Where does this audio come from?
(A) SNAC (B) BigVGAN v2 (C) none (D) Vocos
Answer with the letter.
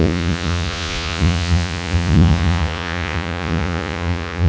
D